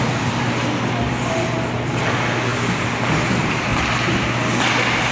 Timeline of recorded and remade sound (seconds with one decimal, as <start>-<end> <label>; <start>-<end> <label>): 0.0-5.1 recorded